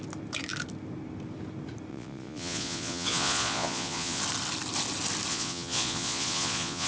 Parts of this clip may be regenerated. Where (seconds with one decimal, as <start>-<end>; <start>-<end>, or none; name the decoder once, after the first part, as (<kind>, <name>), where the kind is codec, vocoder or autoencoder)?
1.9-4.2 (vocoder, Vocos); 5.3-6.9